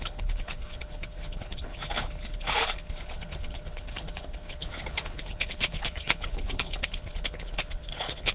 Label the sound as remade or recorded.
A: remade